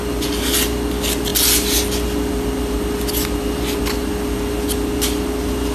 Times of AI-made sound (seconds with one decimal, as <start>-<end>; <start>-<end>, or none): none